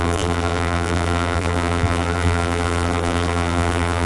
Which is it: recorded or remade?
remade